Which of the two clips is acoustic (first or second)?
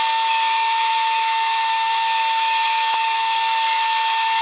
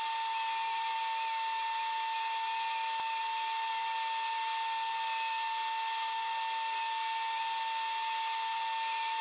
second